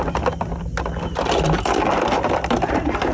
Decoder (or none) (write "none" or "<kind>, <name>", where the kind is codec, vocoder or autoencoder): none